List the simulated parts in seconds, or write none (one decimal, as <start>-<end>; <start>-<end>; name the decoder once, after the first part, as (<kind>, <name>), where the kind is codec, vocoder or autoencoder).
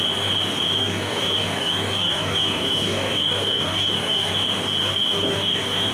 0.8-4.3 (codec, DAC); 4.8-5.9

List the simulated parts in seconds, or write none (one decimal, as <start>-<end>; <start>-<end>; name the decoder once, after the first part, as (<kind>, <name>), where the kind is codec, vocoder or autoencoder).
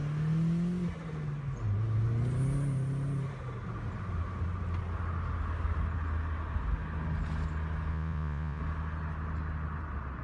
7.9-8.6 (vocoder, Vocos)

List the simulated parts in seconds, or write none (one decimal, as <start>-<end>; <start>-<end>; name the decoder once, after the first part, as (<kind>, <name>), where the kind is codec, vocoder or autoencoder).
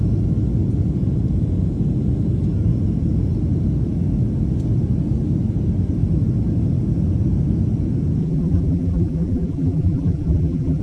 8.2-10.8 (vocoder, BigVGAN v2)